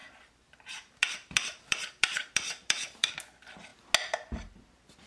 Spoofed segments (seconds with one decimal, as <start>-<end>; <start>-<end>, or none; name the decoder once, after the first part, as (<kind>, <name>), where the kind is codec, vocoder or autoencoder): 0.0-3.1 (vocoder, BigVGAN v2)